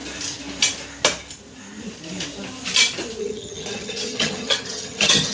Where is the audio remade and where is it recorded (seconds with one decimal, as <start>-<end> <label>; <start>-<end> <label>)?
0.0-3.2 recorded; 3.2-5.3 remade